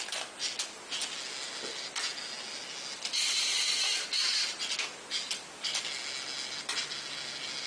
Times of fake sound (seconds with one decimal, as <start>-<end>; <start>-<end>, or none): none